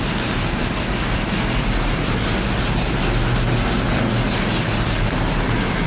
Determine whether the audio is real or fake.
real